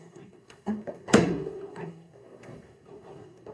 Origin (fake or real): fake